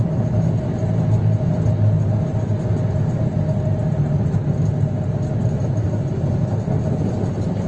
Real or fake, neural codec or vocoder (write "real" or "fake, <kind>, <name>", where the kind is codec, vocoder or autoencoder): real